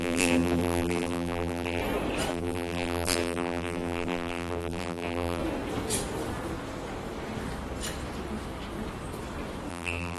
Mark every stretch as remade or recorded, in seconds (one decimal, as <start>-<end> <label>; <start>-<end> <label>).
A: 0.0-1.8 remade; 1.8-2.3 recorded; 2.3-5.4 remade; 5.4-9.7 recorded; 9.7-10.2 remade